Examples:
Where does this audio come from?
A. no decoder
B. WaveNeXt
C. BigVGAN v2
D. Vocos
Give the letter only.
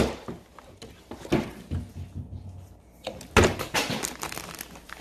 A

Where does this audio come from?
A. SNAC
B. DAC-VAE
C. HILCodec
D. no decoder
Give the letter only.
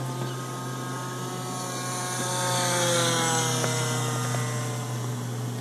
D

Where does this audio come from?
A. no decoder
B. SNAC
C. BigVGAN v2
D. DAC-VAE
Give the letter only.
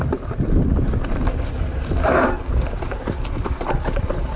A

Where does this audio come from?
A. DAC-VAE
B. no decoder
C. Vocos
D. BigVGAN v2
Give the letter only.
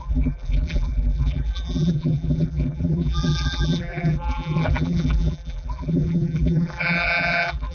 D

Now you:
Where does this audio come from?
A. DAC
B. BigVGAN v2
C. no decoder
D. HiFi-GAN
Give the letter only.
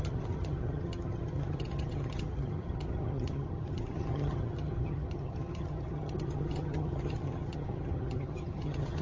D